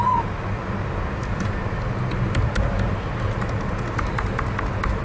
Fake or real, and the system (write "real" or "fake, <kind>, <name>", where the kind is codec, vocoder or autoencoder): real